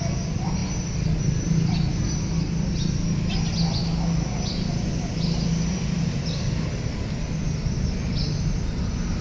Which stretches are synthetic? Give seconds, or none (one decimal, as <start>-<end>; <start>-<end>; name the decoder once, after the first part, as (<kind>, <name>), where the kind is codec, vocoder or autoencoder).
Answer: none